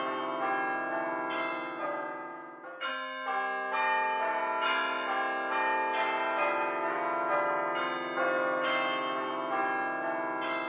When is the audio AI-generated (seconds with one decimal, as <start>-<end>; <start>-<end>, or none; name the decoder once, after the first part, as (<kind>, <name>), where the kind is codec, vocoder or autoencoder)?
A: 1.5-2.9 (vocoder, Vocos)